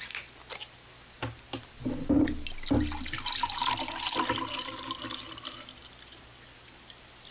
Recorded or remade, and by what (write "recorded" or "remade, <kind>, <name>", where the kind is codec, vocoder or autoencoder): recorded